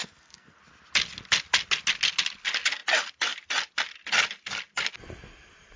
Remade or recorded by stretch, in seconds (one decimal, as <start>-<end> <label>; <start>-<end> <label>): 0.0-0.6 remade; 0.6-5.8 recorded